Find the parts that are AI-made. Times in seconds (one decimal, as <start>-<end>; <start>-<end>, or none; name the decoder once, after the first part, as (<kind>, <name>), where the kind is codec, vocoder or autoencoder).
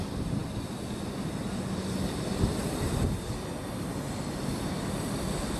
none